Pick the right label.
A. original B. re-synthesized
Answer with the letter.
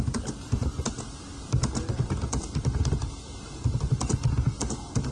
A